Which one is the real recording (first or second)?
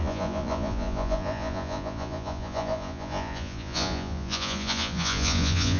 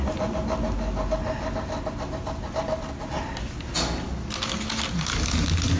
second